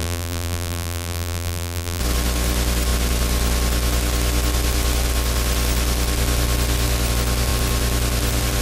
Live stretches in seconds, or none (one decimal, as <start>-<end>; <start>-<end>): 2.0-8.6